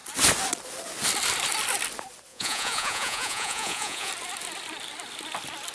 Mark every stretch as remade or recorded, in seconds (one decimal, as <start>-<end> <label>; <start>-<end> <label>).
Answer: 0.0-2.3 recorded; 2.3-4.1 remade; 4.1-5.7 recorded